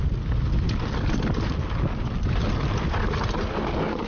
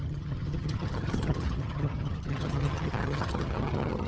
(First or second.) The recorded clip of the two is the first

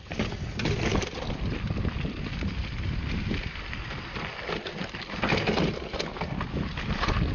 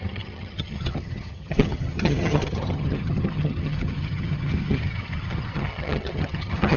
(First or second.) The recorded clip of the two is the first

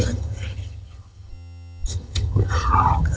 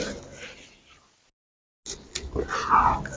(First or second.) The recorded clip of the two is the second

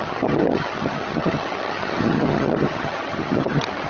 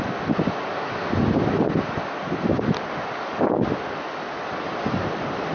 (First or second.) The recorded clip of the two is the second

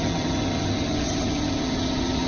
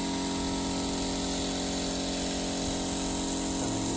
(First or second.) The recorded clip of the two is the second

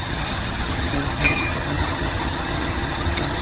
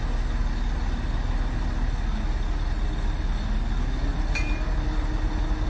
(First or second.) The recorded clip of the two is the second